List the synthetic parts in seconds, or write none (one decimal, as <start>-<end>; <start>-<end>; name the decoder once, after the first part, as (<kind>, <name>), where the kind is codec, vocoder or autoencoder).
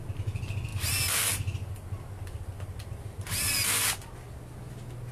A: none